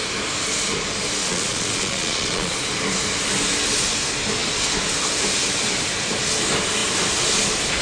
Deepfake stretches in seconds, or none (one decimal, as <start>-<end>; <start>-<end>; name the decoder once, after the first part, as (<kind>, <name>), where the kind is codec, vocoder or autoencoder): 1.2-2.5 (vocoder, Vocos)